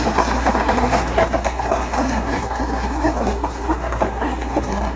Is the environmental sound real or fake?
fake